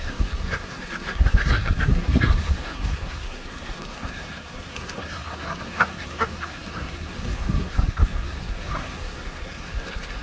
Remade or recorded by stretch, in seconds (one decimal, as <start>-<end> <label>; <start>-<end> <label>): 0.0-10.2 remade